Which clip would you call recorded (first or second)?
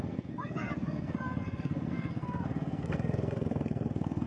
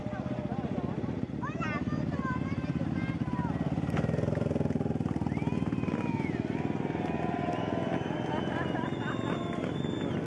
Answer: second